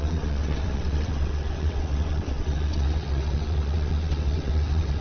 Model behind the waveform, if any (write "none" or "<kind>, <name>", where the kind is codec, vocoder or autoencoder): vocoder, WaveNeXt